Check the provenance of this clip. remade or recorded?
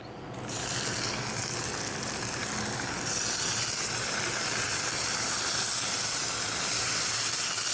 recorded